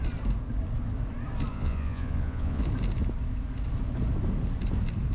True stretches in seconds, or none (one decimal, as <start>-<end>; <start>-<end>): 0.0-1.5; 2.6-5.1